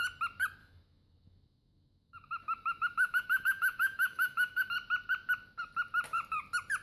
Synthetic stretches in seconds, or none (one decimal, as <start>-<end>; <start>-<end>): 0.6-4.7